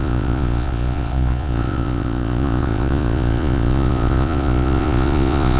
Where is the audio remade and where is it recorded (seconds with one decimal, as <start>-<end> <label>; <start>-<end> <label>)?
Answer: 0.0-5.6 remade